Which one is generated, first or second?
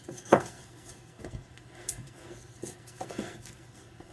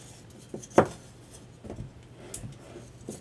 first